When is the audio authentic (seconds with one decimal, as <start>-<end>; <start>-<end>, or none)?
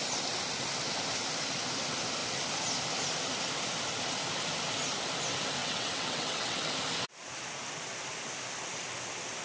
0.0-5.6; 6.7-9.4